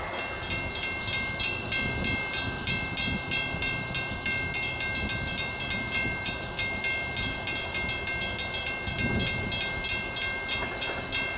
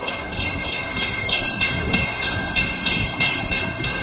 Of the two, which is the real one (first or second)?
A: first